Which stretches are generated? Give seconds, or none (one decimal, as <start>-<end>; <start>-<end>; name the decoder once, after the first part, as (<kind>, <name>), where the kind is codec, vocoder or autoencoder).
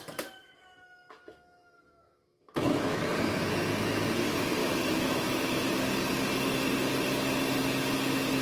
0.4-3.1 (autoencoder, DAC-VAE); 4.6-5.7